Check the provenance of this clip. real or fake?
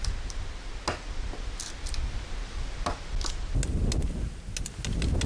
real